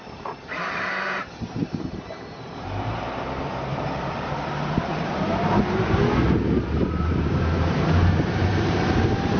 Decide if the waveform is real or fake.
fake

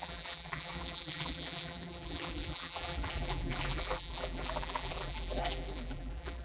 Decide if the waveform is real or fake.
fake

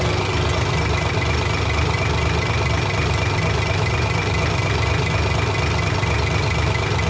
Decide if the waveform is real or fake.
real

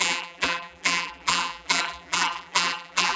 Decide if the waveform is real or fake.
fake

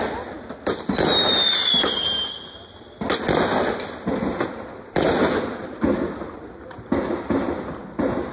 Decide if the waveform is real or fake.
real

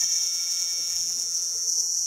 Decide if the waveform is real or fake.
fake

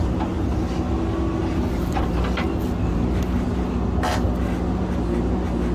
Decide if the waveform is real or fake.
real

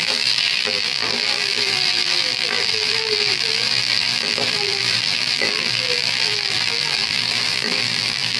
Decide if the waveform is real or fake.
fake